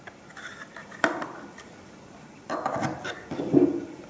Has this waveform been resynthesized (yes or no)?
no